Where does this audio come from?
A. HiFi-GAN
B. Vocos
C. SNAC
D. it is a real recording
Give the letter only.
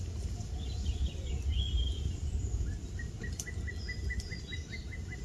D